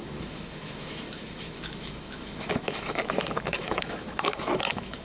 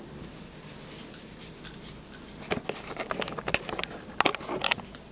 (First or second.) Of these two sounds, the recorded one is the second